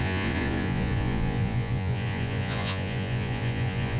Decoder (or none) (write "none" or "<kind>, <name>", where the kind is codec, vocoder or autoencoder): vocoder, Vocos